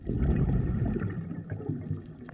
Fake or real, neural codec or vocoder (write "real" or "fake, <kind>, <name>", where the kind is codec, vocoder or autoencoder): fake, vocoder, BigVGAN v2